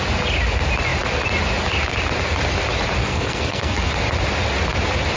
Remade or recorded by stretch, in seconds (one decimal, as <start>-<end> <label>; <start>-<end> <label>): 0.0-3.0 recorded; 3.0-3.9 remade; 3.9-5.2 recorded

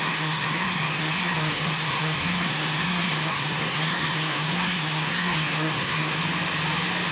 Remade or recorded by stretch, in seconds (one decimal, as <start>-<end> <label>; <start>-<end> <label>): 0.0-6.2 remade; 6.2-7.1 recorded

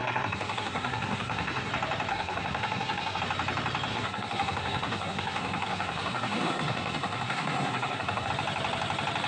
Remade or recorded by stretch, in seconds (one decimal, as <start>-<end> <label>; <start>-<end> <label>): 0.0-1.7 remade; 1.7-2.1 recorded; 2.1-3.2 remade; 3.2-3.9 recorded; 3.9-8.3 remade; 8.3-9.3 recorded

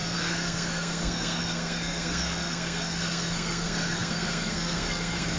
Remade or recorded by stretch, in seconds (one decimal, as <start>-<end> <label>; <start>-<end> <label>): 0.0-5.4 remade

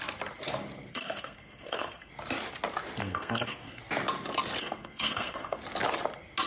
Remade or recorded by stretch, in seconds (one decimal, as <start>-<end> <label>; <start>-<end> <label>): 0.0-0.9 recorded; 0.9-2.1 remade; 2.1-3.0 recorded; 3.0-3.8 remade; 3.8-4.6 recorded; 4.6-5.6 remade; 5.6-6.5 recorded

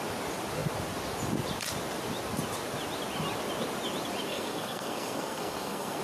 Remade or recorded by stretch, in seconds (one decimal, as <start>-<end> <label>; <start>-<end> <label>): 0.0-4.3 recorded; 4.3-6.0 remade

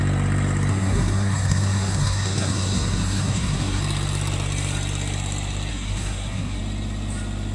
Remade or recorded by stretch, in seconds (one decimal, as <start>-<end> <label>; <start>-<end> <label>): 0.0-0.7 recorded; 0.7-3.8 remade; 3.8-5.7 recorded; 5.7-6.6 remade; 6.6-7.5 recorded

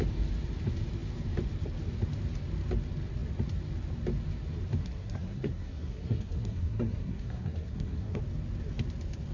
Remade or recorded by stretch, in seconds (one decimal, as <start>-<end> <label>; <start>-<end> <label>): 0.0-4.8 recorded; 4.8-8.2 remade; 8.2-9.3 recorded